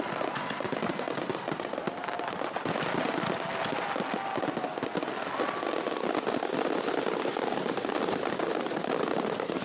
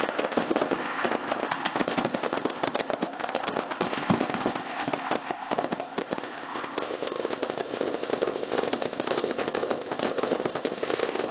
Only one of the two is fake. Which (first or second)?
second